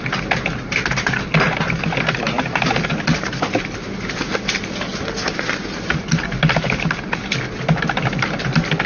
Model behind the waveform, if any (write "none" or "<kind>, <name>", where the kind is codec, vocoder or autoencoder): none